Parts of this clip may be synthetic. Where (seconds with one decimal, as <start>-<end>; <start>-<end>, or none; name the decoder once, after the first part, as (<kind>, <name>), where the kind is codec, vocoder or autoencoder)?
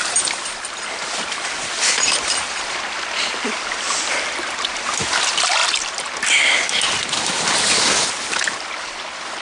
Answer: none